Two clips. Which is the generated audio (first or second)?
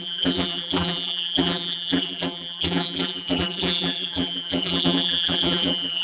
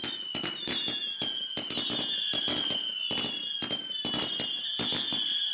first